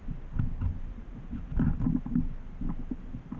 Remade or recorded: recorded